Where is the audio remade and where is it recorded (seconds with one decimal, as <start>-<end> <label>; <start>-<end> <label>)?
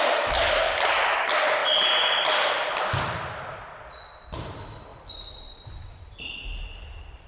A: 0.0-7.3 recorded